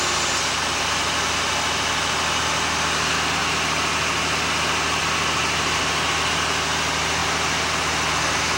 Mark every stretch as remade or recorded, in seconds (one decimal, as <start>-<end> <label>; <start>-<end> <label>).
0.0-8.6 recorded